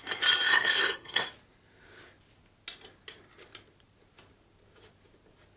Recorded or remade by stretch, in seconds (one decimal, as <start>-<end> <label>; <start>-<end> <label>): 0.0-0.5 recorded; 0.5-1.2 remade; 1.2-5.6 recorded